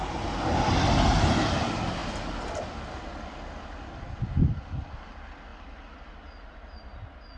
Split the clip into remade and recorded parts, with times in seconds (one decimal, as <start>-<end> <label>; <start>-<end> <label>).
0.0-7.4 recorded

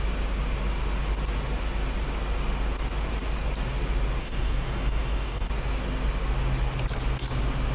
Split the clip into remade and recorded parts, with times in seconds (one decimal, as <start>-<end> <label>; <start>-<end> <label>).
0.0-4.2 recorded; 4.2-5.5 remade; 5.5-7.7 recorded

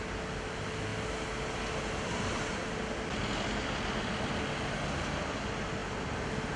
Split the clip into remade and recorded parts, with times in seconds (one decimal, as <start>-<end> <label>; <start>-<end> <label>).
0.0-6.6 recorded

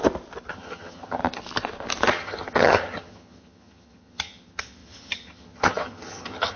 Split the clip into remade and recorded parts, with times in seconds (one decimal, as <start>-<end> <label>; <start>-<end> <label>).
0.0-0.5 recorded; 0.5-1.2 remade; 1.2-2.1 recorded; 2.1-6.6 remade

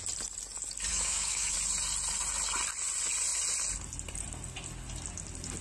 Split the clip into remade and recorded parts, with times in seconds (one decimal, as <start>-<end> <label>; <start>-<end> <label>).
0.0-0.9 recorded; 0.9-1.5 remade; 1.5-5.6 recorded